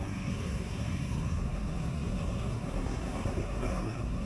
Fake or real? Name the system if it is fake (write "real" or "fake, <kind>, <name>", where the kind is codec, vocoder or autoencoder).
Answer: fake, codec, SNAC